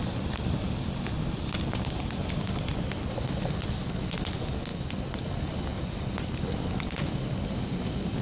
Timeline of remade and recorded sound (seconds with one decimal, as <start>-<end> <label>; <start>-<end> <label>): 0.0-8.2 recorded